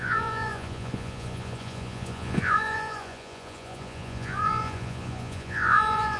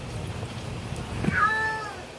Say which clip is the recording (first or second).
second